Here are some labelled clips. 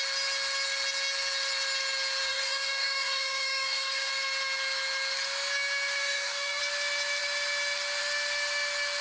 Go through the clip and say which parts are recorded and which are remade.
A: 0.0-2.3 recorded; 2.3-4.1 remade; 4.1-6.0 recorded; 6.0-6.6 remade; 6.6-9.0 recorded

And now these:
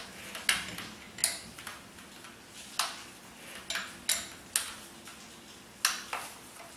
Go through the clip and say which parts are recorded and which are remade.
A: 0.0-6.8 recorded

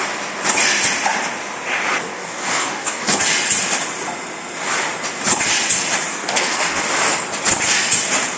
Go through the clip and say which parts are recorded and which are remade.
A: 0.0-2.0 recorded; 2.0-3.2 remade; 3.2-6.1 recorded; 6.1-6.8 remade; 6.8-8.4 recorded

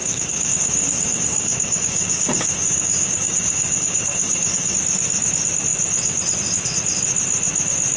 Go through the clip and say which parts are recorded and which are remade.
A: 0.0-4.7 remade; 4.7-8.0 recorded

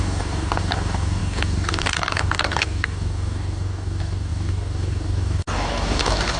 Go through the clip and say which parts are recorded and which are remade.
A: 0.0-6.4 remade